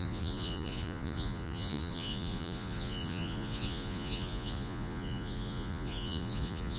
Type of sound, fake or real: fake